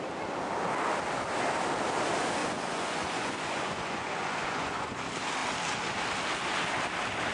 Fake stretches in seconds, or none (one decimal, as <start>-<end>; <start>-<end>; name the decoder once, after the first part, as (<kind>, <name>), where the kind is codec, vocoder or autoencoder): 2.4-5.0 (vocoder, Vocos)